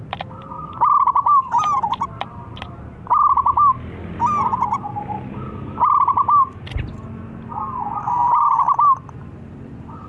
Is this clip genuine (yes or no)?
yes